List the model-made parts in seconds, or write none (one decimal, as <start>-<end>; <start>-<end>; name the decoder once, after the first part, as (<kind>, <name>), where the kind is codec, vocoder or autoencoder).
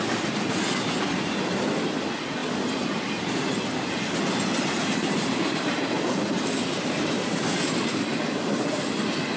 4.5-8.9 (vocoder, BigVGAN v2)